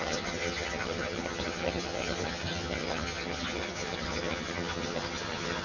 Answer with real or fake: fake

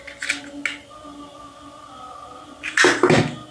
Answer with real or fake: real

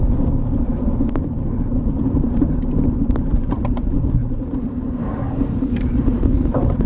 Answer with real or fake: fake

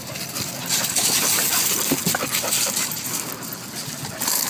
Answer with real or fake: real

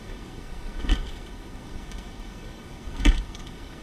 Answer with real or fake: fake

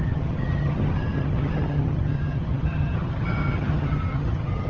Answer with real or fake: fake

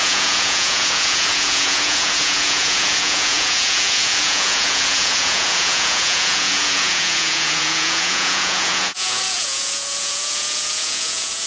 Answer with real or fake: fake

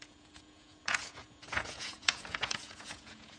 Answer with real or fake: fake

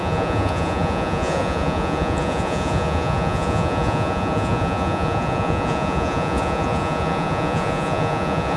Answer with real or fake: fake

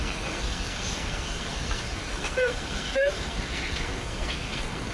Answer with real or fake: fake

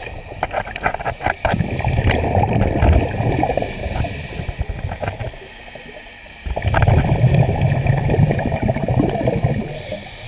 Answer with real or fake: real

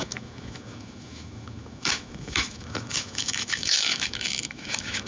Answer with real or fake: fake